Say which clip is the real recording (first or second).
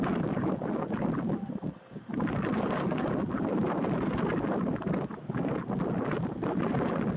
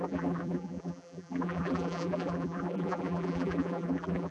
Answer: first